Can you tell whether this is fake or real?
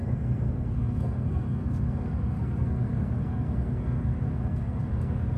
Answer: fake